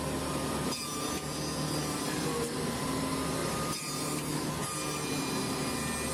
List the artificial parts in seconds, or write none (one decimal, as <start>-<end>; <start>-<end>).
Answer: 3.4-4.4